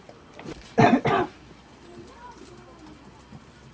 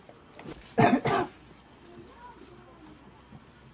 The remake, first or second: first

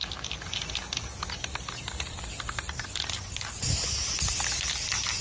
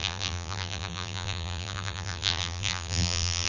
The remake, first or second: second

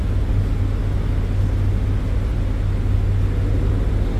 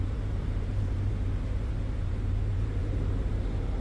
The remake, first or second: second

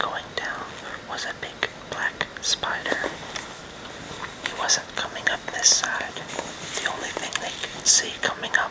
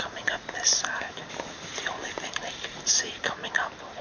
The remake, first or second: second